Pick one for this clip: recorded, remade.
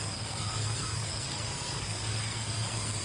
remade